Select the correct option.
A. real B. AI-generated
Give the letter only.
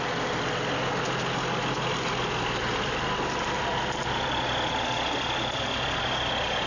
A